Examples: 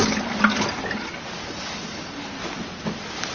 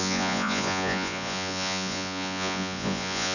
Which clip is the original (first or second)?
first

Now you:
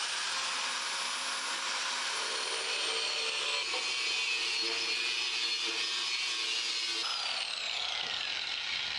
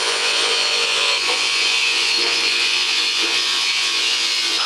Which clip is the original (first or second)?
first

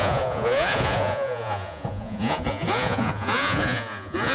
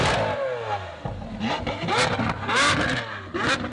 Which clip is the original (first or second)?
second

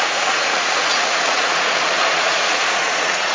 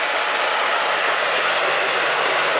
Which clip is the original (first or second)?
second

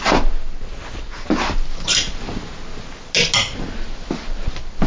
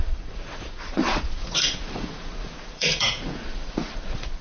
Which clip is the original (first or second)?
first